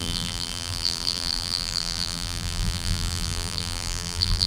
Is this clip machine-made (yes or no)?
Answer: yes